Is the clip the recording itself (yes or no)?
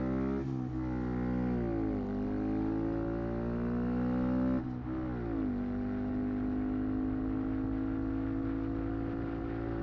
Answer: yes